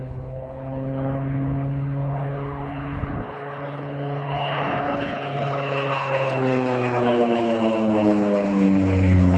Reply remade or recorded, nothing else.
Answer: remade